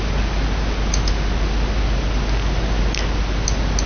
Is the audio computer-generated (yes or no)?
no